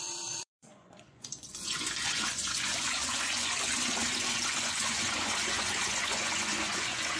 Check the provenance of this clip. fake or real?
fake